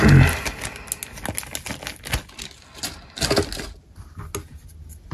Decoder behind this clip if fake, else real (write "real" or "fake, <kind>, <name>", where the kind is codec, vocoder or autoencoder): real